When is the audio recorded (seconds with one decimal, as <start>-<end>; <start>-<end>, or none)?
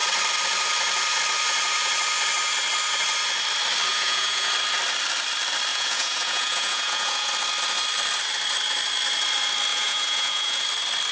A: 0.0-3.9; 4.5-5.7; 7.3-9.7; 10.6-11.1